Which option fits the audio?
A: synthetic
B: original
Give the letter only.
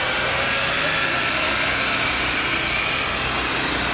B